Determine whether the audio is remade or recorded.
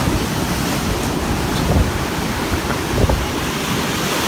recorded